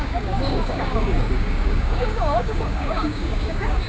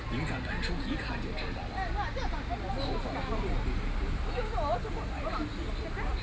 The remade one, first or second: first